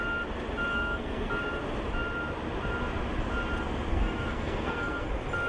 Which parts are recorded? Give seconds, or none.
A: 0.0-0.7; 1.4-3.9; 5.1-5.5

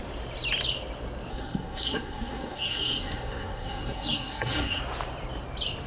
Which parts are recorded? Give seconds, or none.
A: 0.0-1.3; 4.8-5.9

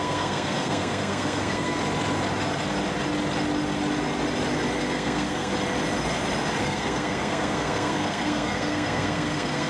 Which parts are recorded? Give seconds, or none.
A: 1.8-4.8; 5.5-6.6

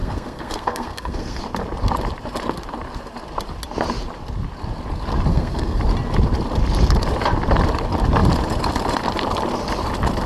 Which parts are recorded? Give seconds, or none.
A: 1.4-5.3; 5.8-10.3